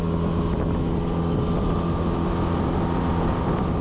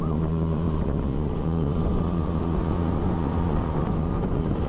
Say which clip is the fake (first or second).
second